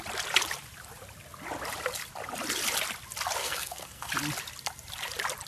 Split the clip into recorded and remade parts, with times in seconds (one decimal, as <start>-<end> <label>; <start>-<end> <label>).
0.0-3.4 recorded; 3.4-4.1 remade; 4.1-5.5 recorded